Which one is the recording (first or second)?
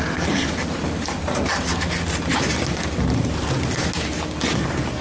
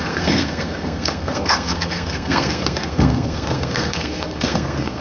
first